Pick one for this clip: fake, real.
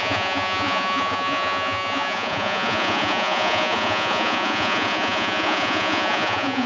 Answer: fake